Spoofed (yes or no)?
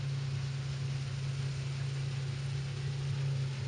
no